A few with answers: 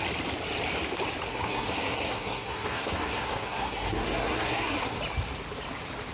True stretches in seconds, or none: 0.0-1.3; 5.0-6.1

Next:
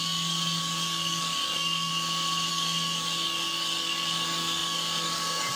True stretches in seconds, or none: 1.9-2.5

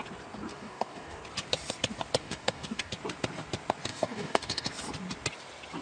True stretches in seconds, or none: 0.0-0.5; 1.2-2.2; 2.9-3.9; 4.7-5.8

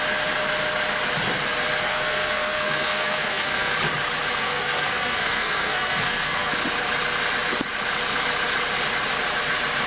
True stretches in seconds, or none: 0.0-1.9; 3.7-4.4; 6.5-9.9

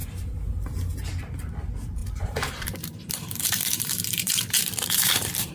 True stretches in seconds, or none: 0.0-2.0

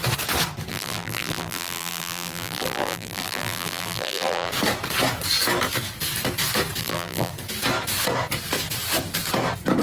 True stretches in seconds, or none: 0.0-0.7; 4.5-6.8; 7.3-9.8

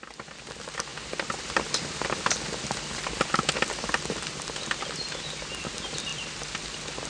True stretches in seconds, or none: 0.0-7.1